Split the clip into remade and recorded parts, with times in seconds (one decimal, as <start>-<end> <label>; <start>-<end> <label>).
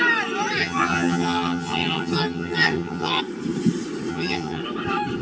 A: 0.0-0.6 recorded; 0.6-3.2 remade; 3.2-4.1 recorded; 4.1-4.6 remade; 4.6-5.2 recorded